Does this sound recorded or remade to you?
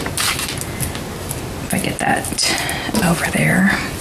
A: recorded